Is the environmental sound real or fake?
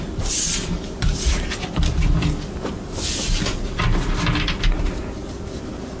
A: real